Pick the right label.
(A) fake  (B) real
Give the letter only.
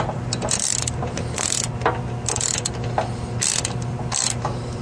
B